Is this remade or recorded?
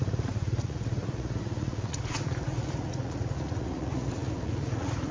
remade